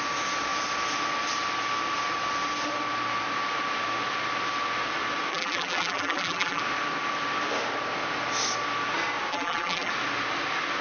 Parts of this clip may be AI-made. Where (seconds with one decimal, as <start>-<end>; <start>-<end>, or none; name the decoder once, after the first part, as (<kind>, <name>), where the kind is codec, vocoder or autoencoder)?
5.3-6.6 (vocoder, BigVGAN v2); 9.3-9.9